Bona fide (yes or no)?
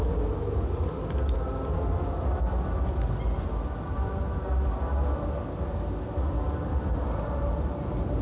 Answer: yes